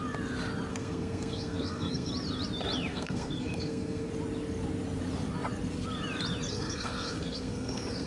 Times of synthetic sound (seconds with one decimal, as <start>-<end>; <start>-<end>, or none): 0.7-2.1; 2.9-4.1; 6.5-8.1